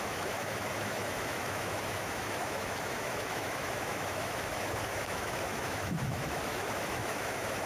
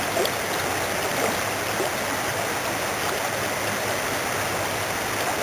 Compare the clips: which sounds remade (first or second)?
first